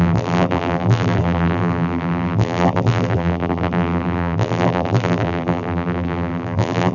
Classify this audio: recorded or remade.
remade